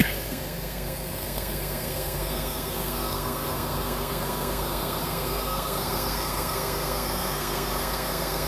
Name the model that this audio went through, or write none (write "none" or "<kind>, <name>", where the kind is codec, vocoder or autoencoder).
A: codec, SNAC